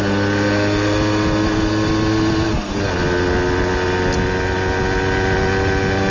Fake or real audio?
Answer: real